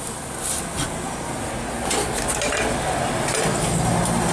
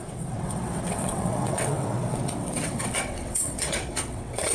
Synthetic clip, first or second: second